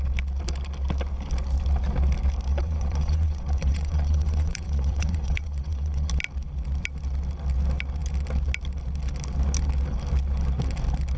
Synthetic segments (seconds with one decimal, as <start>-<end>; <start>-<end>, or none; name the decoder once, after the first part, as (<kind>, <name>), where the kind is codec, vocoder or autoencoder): 2.5-6.1 (vocoder, WaveNeXt)

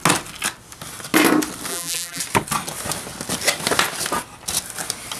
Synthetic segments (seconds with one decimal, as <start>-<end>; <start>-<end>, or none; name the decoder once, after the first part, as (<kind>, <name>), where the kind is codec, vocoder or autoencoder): 1.7-2.2 (vocoder, BigVGAN v2)

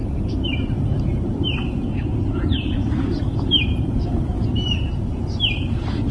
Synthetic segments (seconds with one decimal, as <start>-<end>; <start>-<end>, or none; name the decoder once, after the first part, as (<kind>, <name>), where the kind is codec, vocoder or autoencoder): 0.0-6.1 (vocoder, BigVGAN v2)

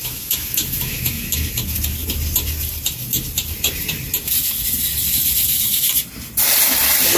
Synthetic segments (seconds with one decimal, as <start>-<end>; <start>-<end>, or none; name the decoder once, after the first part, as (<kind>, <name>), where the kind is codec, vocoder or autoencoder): 0.0-1.6 (autoencoder, DAC-VAE)